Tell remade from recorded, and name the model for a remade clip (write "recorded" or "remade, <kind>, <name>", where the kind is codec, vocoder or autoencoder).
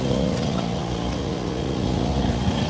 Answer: remade, vocoder, Vocos